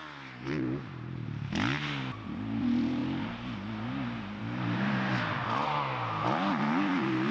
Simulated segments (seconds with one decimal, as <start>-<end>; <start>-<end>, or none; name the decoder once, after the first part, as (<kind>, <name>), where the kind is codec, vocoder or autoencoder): none